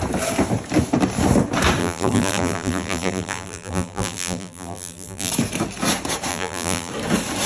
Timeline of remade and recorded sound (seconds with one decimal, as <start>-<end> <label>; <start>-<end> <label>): 0.0-1.8 recorded; 1.8-5.3 remade; 5.3-6.3 recorded; 6.3-6.9 remade; 6.9-7.5 recorded